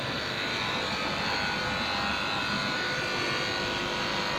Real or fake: real